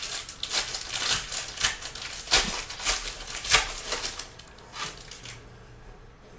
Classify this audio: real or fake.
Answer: real